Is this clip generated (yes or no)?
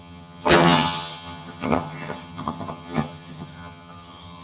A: yes